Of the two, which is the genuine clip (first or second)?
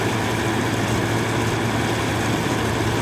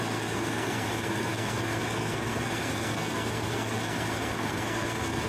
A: first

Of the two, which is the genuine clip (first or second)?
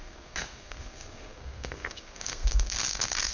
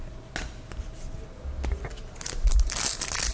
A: second